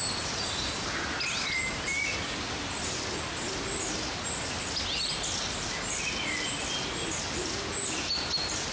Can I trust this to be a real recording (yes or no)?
yes